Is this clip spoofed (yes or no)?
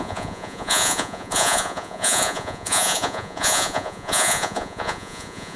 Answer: yes